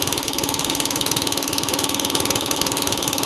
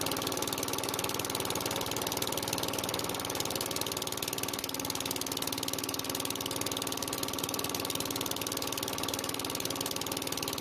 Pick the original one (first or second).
second